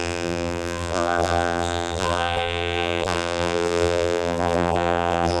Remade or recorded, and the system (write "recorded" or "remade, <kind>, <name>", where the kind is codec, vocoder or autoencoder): remade, vocoder, BigVGAN v2